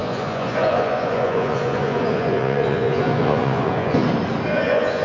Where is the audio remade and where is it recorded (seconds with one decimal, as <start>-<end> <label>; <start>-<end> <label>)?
0.0-4.0 remade; 4.0-4.5 recorded; 4.5-5.0 remade